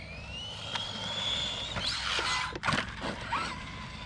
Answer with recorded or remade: recorded